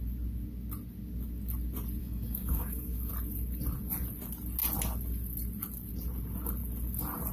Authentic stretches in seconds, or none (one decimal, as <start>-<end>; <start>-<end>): 0.0-2.0; 3.1-7.3